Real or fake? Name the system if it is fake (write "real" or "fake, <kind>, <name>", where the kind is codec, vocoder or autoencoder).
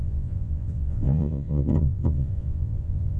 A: fake, vocoder, Vocos